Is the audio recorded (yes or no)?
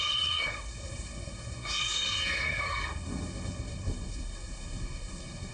no